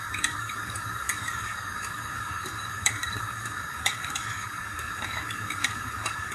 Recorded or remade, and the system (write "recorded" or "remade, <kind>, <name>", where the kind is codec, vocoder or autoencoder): remade, codec, DAC